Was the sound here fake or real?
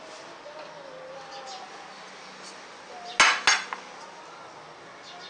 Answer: real